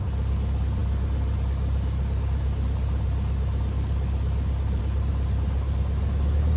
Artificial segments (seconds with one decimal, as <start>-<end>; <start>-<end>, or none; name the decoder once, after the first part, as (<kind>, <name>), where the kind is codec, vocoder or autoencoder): none